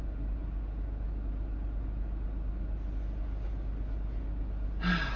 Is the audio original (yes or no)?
yes